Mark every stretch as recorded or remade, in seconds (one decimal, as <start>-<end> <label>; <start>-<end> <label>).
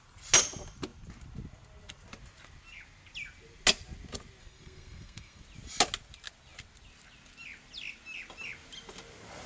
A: 0.0-4.4 recorded; 4.4-5.4 remade; 5.4-9.5 recorded